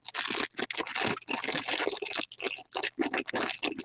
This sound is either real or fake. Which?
real